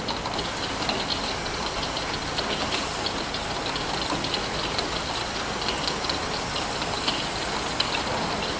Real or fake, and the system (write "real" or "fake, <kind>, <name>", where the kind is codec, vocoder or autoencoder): real